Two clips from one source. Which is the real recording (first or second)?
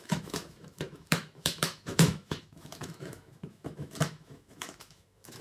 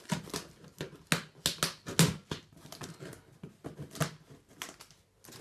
second